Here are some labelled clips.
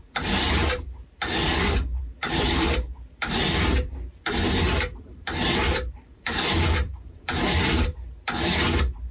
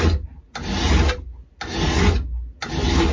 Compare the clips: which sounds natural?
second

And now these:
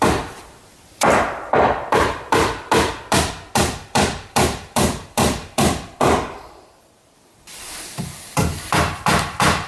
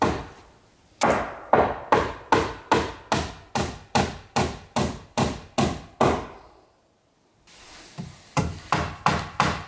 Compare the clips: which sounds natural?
second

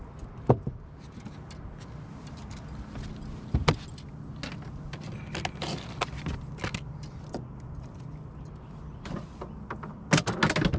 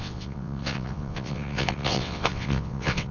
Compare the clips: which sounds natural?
first